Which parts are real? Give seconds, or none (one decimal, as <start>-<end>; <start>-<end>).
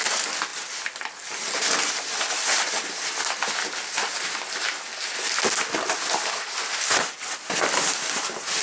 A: 0.0-8.6